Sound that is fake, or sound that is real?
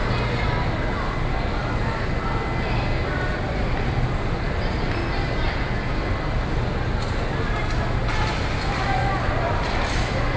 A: real